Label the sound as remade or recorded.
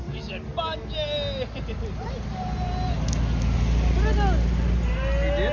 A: recorded